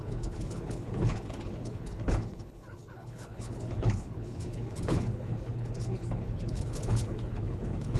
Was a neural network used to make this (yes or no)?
yes